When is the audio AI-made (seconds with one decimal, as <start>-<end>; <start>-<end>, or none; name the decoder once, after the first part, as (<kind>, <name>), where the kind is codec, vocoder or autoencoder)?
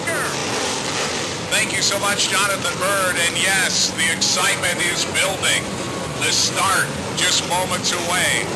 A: 4.3-7.1 (vocoder, Vocos)